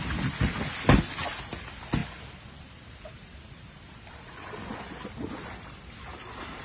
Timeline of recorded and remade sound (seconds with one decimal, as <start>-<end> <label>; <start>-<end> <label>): 0.0-6.6 recorded